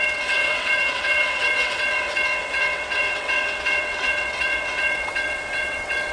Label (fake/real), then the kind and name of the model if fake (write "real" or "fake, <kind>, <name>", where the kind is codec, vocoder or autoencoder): fake, vocoder, WaveNeXt